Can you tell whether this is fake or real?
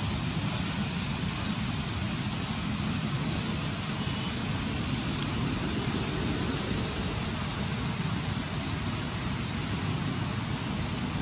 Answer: real